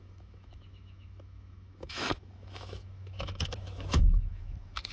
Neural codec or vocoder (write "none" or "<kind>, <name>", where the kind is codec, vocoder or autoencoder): autoencoder, DAC-VAE